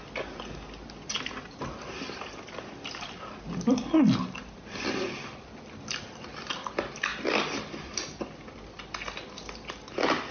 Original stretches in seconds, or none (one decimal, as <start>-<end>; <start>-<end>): 0.0-10.3